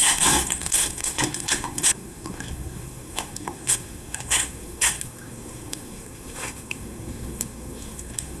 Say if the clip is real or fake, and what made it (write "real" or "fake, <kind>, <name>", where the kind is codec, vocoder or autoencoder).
fake, codec, SNAC